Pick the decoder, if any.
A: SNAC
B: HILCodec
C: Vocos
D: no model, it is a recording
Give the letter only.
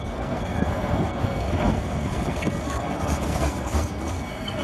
A